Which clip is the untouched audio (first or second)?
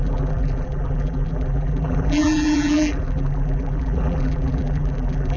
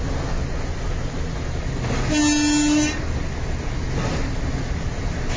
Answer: second